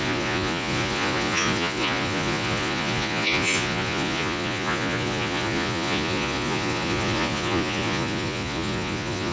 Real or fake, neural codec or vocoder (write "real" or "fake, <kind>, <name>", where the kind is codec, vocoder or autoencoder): fake, vocoder, Vocos